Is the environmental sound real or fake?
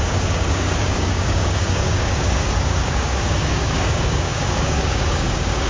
fake